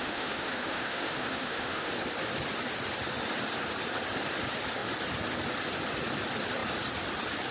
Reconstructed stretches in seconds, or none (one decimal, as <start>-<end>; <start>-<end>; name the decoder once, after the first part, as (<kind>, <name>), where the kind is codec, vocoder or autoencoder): 0.0-1.9 (autoencoder, DAC-VAE)